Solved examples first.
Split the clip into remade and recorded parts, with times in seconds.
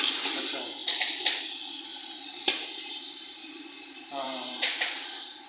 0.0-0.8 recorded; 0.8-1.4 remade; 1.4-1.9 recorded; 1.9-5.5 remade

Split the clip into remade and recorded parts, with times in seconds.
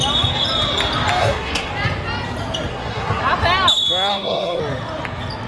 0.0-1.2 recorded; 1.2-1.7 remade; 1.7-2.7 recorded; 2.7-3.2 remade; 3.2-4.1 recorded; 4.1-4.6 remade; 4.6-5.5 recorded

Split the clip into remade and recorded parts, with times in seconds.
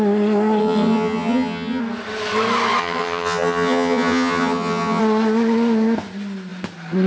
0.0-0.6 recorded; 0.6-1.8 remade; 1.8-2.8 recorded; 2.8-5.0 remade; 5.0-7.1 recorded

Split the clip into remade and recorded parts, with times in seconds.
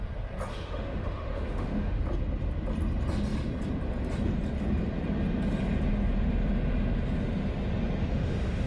0.0-0.5 recorded; 0.5-2.0 remade; 2.0-8.0 recorded; 8.0-8.7 remade